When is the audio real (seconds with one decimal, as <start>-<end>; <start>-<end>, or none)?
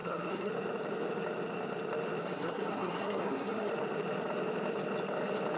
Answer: 0.5-2.2; 3.7-5.6